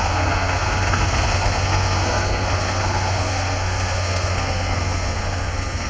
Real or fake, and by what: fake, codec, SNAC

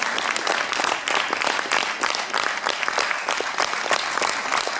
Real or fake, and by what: real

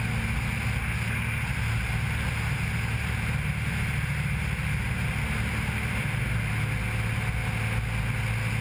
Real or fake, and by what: real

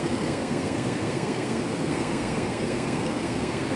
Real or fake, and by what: fake, codec, SNAC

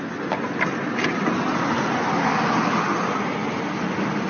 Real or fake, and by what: real